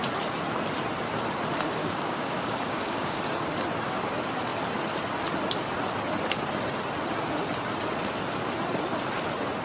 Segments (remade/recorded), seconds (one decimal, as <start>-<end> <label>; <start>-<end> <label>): 0.0-1.8 recorded; 1.8-3.2 remade; 3.2-9.6 recorded